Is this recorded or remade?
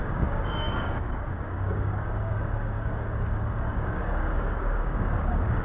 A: remade